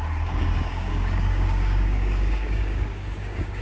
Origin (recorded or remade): remade